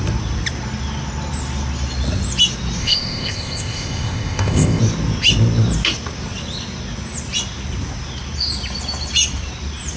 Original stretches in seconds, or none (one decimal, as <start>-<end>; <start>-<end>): 0.0-2.8; 4.8-10.0